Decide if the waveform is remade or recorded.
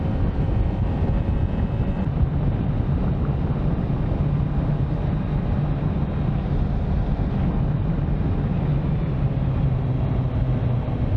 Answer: recorded